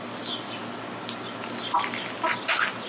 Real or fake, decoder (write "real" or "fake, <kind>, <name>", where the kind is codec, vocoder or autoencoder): real